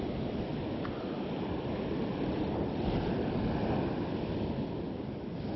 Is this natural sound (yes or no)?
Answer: yes